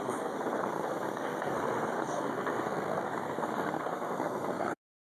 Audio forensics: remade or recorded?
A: remade